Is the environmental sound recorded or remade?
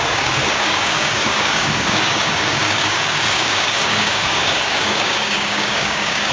remade